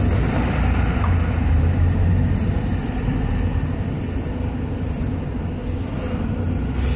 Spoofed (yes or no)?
no